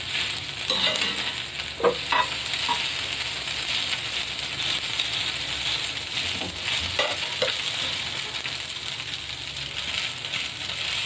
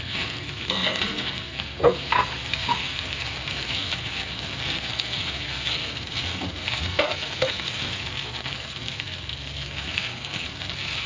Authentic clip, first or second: first